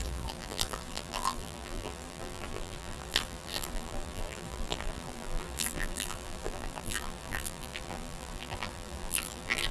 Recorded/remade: remade